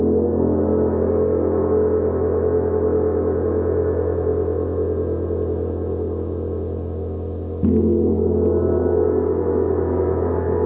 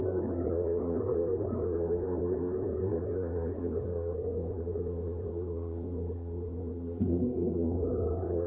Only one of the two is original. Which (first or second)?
first